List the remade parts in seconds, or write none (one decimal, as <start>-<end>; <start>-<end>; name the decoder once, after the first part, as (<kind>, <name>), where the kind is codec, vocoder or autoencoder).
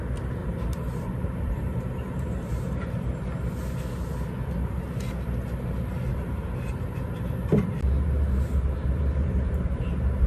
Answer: 0.4-3.1 (vocoder, BigVGAN v2); 6.1-9.8